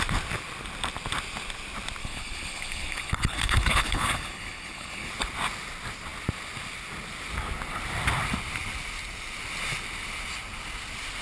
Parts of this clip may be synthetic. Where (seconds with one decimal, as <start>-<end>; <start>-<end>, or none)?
2.0-5.1